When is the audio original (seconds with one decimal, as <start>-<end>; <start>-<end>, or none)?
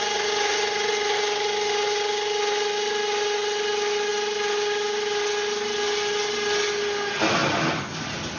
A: 0.0-8.4